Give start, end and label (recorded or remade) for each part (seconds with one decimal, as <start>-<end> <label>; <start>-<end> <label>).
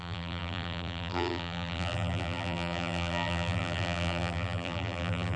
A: 0.0-5.4 remade